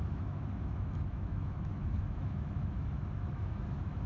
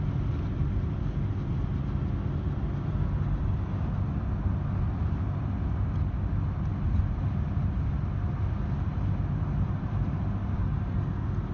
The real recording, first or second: second